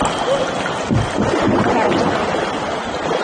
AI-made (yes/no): no